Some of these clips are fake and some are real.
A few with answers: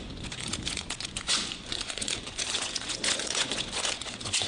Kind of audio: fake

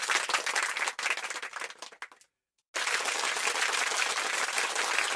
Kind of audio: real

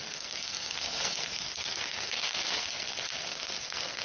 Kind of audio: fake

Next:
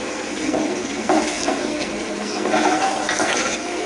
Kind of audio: fake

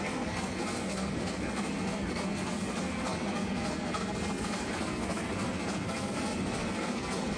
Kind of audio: fake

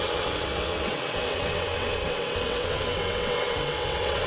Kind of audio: fake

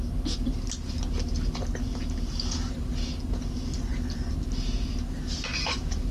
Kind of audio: real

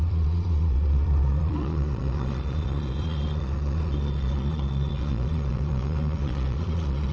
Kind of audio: fake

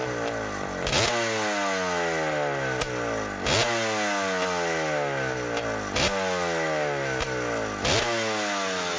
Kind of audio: real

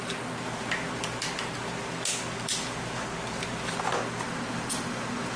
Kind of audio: real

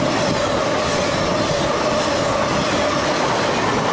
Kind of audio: real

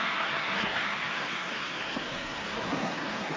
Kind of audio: fake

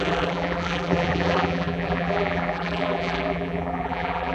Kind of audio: fake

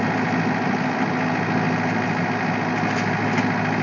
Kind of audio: real